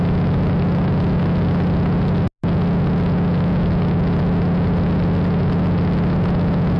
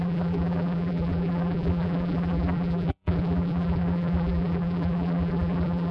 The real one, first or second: first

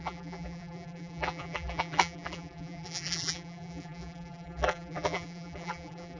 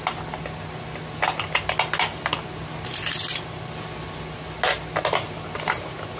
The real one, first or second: second